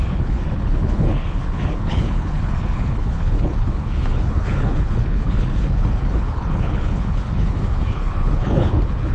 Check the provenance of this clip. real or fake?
fake